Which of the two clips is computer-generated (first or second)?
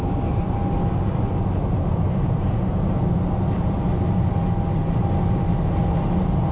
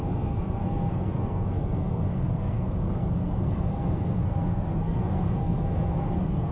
second